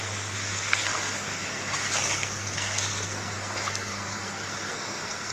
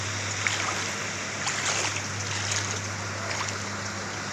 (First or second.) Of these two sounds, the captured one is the second